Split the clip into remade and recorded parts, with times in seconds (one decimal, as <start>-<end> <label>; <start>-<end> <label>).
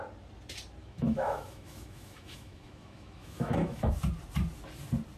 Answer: 0.0-0.8 recorded; 0.8-3.9 remade; 3.9-5.2 recorded